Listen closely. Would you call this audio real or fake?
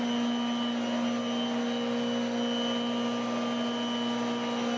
real